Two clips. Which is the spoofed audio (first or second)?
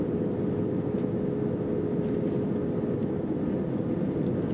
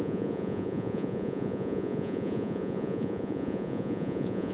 second